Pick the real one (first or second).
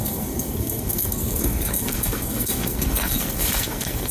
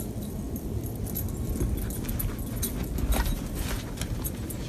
second